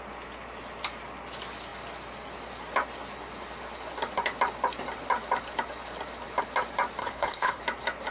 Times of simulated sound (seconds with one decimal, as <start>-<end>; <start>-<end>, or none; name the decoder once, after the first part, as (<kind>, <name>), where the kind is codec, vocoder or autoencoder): 7.0-7.6 (codec, HILCodec)